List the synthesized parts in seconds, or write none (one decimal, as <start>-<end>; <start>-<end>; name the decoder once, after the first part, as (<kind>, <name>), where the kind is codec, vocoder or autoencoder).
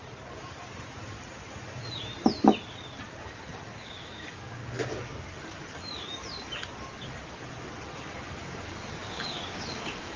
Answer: 3.7-4.6 (codec, DAC); 9.0-10.2